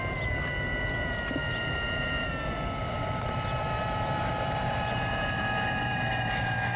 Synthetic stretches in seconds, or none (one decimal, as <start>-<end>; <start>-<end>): 1.4-2.3; 2.8-6.8